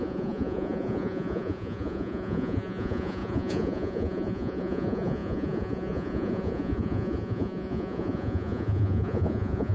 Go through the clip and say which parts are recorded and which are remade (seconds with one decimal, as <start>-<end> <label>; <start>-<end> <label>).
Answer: 0.0-9.7 remade

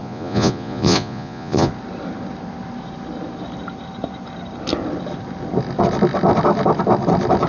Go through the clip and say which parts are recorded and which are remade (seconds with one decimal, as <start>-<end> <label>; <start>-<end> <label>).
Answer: 0.0-1.7 remade; 1.7-7.5 recorded

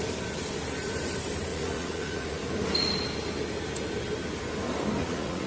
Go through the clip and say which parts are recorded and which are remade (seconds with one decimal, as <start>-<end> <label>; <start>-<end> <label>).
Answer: 0.0-1.5 recorded; 1.5-2.4 remade; 2.4-5.0 recorded; 5.0-5.5 remade

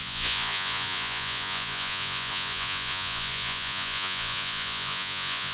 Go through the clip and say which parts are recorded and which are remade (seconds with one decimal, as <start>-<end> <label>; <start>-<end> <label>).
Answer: 0.0-5.5 remade

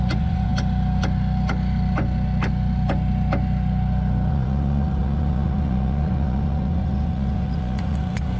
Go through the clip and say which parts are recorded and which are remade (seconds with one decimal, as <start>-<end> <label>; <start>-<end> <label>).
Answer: 0.0-0.5 remade; 0.5-4.3 recorded; 4.3-8.4 remade

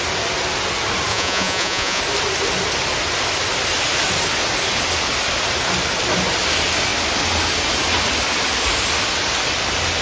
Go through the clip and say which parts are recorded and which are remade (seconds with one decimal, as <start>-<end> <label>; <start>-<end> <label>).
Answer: 0.0-1.1 recorded; 1.1-2.0 remade; 2.0-10.0 recorded

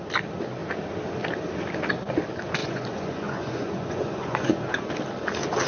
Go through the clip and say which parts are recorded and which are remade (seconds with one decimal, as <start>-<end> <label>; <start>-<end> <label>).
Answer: 0.0-2.6 recorded; 2.6-4.9 remade; 4.9-5.7 recorded

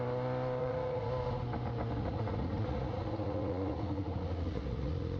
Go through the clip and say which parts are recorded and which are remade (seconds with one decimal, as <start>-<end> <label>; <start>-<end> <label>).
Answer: 0.0-0.6 recorded; 0.6-1.1 remade; 1.1-2.0 recorded; 2.0-5.2 remade